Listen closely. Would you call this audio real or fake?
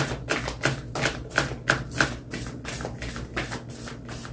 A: real